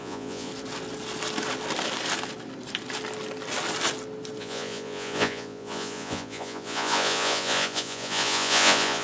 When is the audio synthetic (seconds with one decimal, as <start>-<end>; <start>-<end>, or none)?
0.0-0.5; 4.4-9.0